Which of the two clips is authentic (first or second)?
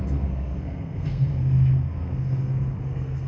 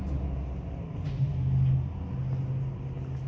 second